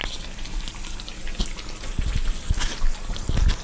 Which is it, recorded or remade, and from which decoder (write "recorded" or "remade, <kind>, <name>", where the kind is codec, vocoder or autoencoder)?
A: recorded